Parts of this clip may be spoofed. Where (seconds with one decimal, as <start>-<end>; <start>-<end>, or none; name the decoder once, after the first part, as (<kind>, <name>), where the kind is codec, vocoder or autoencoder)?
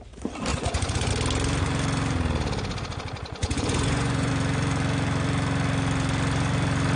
0.5-1.1 (vocoder, Vocos); 3.4-4.3